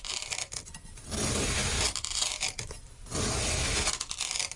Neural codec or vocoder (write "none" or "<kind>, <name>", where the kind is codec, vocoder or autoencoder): none